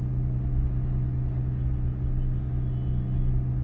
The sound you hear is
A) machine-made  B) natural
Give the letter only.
B